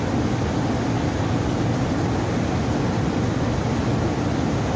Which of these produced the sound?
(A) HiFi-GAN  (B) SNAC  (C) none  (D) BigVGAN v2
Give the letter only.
C